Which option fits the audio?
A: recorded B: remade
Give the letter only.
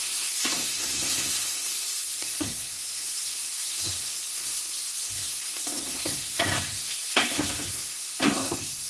B